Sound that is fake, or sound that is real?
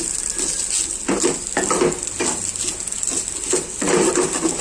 real